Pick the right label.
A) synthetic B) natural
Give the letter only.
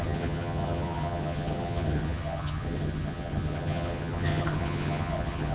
A